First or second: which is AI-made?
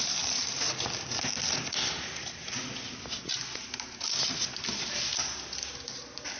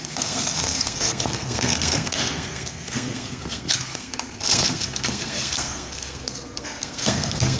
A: second